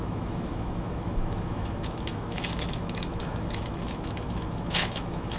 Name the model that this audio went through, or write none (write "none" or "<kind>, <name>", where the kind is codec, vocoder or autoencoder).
autoencoder, DAC-VAE